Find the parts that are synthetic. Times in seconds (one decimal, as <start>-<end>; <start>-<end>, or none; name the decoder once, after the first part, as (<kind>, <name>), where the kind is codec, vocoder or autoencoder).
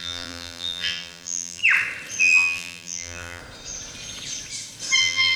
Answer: 0.0-1.6 (vocoder, BigVGAN v2); 2.2-3.4; 5.0-5.4